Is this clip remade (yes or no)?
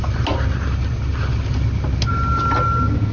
no